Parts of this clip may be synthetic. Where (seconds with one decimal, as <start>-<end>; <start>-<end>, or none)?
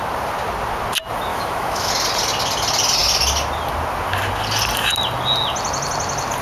1.3-1.9